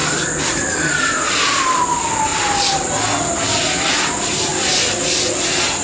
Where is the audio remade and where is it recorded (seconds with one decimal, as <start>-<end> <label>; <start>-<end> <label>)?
0.0-4.5 recorded; 4.5-5.0 remade; 5.0-5.8 recorded